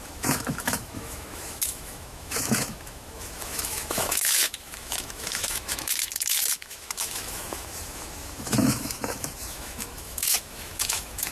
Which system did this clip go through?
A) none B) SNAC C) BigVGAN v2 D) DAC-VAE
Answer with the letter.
D